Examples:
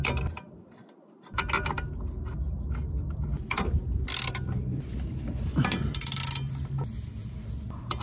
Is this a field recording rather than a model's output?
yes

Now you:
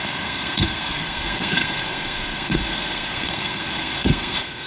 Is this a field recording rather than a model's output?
no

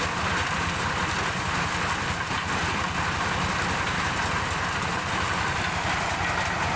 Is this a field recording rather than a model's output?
yes